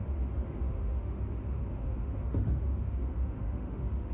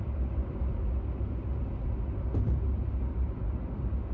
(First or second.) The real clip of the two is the second